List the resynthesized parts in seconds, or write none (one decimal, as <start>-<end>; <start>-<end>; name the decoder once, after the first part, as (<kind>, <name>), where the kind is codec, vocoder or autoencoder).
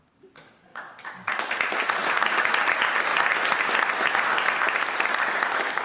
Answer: 0.7-1.3 (codec, DAC)